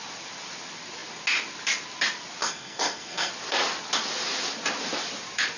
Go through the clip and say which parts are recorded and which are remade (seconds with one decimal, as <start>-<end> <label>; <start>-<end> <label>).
0.0-2.4 recorded; 2.4-3.3 remade; 3.3-5.6 recorded